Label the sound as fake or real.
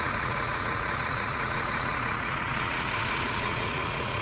fake